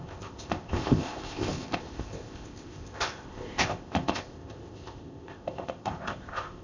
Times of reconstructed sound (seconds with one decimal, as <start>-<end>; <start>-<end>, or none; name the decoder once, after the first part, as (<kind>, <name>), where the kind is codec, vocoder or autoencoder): 0.0-6.6 (codec, ZipCodec)